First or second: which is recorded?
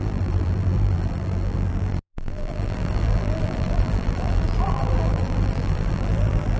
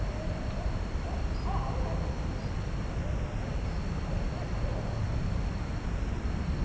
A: second